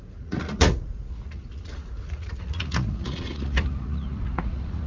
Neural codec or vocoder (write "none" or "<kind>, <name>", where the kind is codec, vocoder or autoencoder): vocoder, Vocos